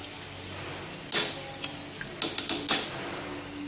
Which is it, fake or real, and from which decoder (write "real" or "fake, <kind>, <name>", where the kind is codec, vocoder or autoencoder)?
real